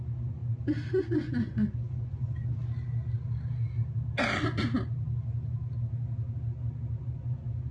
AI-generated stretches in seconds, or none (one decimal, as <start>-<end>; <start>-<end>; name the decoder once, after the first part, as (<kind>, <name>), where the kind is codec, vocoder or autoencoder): 0.0-0.4 (vocoder, Vocos); 1.0-2.5; 7.0-7.7